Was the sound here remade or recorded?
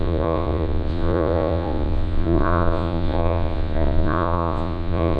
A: remade